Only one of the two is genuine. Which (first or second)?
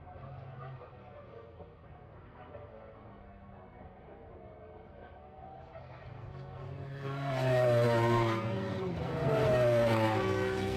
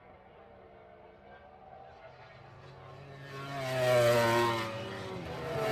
second